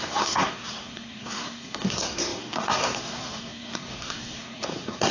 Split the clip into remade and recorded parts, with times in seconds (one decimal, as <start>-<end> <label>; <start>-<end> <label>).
0.0-5.1 remade

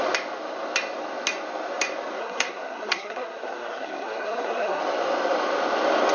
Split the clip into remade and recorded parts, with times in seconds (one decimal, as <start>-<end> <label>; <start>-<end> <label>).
0.0-2.2 recorded; 2.2-4.8 remade; 4.8-6.1 recorded

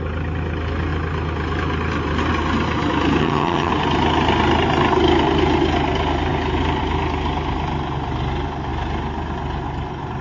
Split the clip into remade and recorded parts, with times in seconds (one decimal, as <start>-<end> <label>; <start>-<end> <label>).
0.0-3.2 recorded; 3.2-3.7 remade; 3.7-10.2 recorded

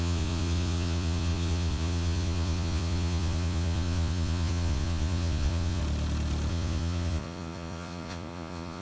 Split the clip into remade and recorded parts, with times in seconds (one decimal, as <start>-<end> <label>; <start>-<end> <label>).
0.0-5.8 remade; 5.8-6.5 recorded; 6.5-8.8 remade

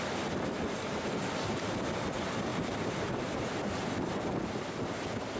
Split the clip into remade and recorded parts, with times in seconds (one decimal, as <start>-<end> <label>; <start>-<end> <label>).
0.0-2.5 recorded; 2.5-3.5 remade; 3.5-5.4 recorded

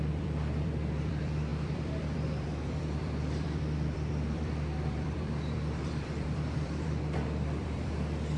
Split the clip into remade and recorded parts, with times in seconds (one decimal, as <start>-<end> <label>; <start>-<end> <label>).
0.0-8.4 remade